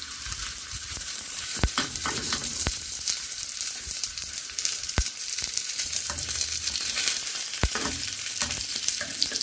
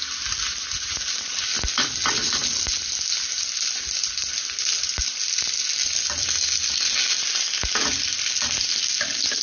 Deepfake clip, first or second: first